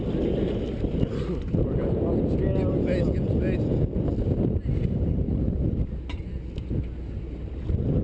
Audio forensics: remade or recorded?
recorded